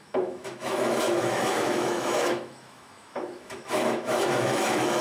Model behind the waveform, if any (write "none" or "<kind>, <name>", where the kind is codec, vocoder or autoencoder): autoencoder, DAC-VAE